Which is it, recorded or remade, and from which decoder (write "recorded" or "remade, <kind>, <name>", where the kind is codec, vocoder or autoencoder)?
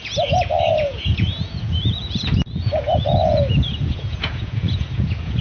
remade, vocoder, Vocos